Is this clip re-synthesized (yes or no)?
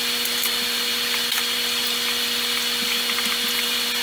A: yes